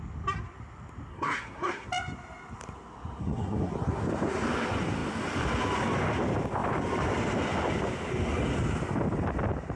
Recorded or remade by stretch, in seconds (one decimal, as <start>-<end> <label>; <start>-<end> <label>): 0.0-1.1 recorded; 1.1-1.9 remade; 1.9-3.2 recorded; 3.2-3.7 remade; 3.7-9.8 recorded